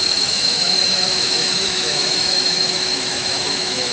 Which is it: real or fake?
fake